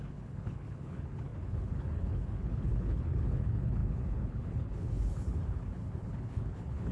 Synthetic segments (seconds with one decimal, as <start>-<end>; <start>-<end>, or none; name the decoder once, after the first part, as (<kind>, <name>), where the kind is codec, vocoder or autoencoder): 0.0-6.9 (codec, HILCodec)